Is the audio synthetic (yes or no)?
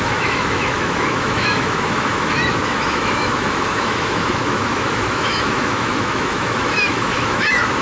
yes